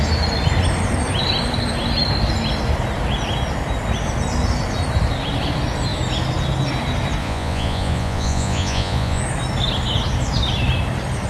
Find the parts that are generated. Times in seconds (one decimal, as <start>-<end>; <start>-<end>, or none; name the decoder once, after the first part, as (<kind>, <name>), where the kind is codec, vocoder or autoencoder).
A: 7.2-9.2 (vocoder, Vocos)